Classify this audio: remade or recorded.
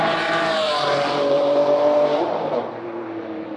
remade